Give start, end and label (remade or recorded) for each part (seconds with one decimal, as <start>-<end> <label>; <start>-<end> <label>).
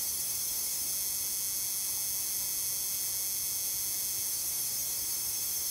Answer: 0.0-0.9 remade; 0.9-4.3 recorded; 4.3-5.7 remade